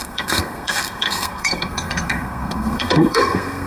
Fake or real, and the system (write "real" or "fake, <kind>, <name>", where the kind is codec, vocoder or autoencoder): fake, codec, SNAC